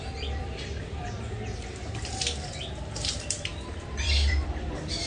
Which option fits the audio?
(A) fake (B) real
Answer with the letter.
A